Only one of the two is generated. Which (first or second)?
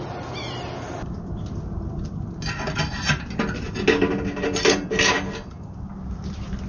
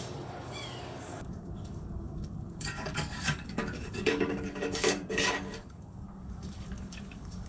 second